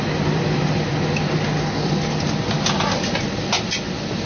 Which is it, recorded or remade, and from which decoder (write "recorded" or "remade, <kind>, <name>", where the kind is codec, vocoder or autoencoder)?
recorded